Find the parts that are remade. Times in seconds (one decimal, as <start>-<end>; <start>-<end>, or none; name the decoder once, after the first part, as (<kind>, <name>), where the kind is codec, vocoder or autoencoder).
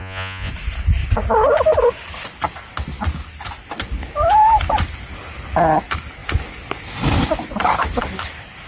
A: 0.0-0.5 (vocoder, Vocos)